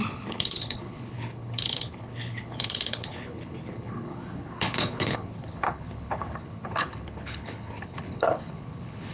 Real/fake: fake